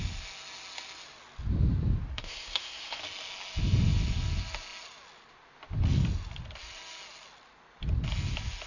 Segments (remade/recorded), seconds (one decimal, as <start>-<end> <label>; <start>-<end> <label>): 0.0-2.1 recorded; 2.1-3.0 remade; 3.0-8.7 recorded